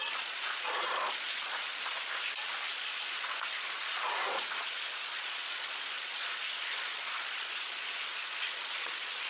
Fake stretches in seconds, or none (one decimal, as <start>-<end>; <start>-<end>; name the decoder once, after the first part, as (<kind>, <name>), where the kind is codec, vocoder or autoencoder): 0.0-2.0 (vocoder, Vocos); 2.7-9.3